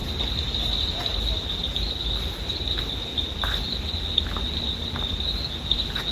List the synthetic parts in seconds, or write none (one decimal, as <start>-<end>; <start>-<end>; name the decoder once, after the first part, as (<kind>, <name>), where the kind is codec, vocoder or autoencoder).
none